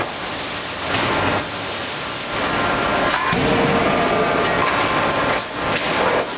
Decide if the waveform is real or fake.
real